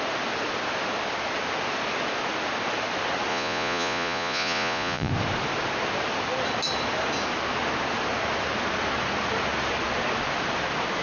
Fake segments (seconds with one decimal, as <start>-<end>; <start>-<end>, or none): 3.3-5.1